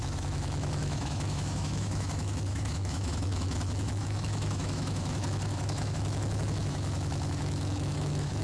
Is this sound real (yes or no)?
no